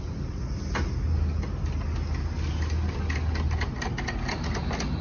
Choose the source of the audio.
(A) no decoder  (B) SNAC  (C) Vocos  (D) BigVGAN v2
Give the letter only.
A